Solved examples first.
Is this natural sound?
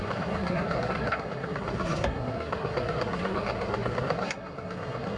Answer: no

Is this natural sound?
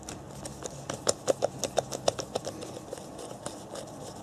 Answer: yes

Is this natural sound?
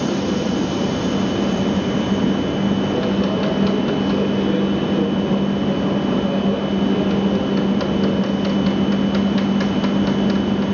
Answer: yes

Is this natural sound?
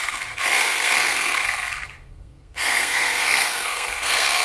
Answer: no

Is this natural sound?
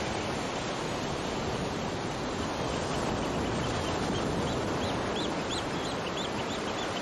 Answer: yes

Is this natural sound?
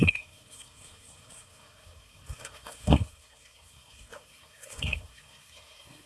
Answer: no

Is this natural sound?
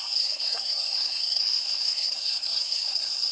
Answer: no